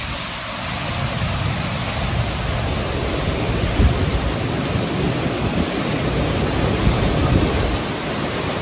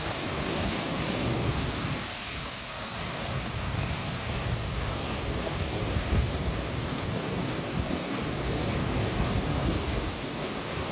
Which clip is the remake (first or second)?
second